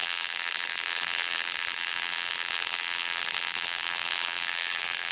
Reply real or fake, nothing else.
fake